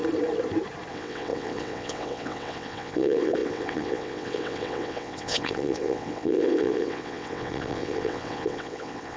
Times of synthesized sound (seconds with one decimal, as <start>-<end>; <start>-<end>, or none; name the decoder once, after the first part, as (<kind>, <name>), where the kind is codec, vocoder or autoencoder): 0.9-9.2 (vocoder, WaveNeXt)